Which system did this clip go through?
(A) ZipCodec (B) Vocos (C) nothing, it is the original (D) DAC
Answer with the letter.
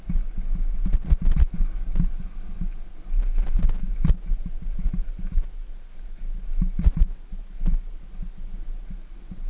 C